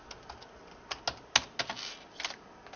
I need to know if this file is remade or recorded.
recorded